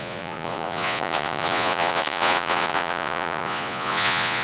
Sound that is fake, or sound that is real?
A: fake